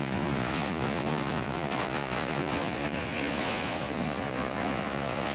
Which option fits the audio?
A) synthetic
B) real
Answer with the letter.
A